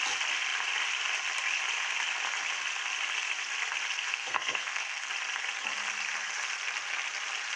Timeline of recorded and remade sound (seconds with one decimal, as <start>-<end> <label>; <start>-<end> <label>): 0.0-4.1 recorded; 4.1-5.1 remade; 5.1-7.6 recorded